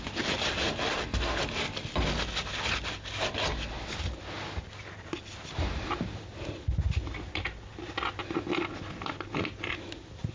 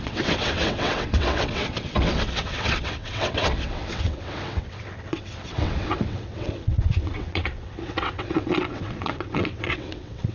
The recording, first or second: first